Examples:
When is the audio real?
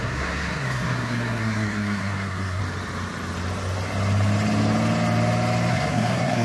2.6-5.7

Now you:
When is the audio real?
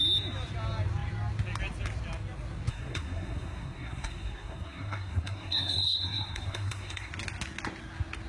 0.0-2.7; 7.1-8.3